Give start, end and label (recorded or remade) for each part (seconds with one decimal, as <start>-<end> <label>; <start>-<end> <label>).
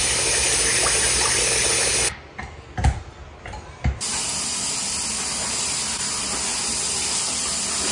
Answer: 0.0-7.9 recorded